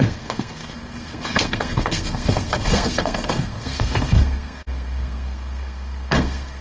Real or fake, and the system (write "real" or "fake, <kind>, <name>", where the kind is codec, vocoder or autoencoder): fake, codec, SNAC